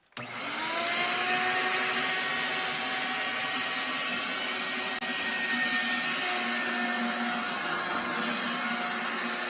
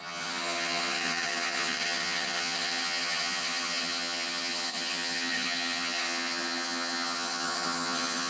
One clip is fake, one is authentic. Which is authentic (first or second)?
first